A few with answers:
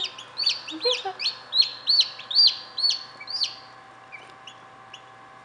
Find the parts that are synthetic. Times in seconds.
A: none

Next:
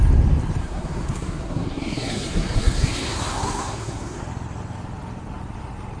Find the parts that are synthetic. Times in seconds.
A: 0.6-4.2 (codec, SNAC)